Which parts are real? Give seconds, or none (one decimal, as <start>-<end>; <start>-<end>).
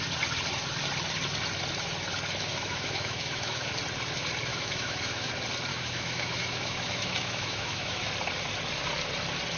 0.0-2.5; 3.7-4.5; 5.3-5.7; 8.1-9.6